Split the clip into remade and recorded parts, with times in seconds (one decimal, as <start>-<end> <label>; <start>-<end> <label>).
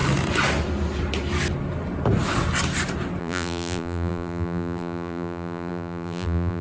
0.0-3.2 recorded; 3.2-6.6 remade